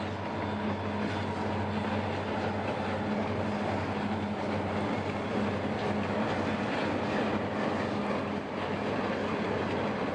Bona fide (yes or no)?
yes